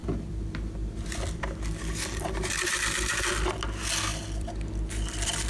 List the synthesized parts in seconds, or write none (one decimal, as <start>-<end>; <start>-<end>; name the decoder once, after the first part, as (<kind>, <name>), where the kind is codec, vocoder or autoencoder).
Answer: 0.0-3.3 (vocoder, BigVGAN v2); 4.1-5.5